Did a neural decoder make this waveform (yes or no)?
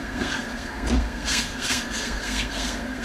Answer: yes